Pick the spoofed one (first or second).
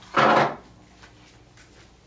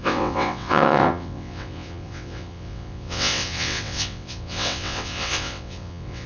second